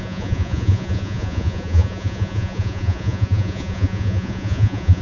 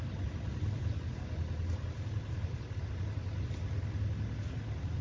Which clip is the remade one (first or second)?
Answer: first